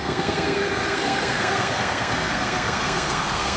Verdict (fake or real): fake